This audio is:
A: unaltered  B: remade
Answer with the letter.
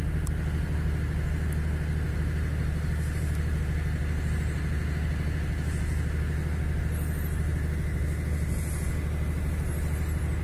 A